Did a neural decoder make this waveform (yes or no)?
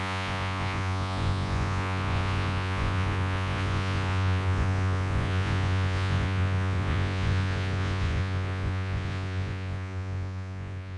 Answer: yes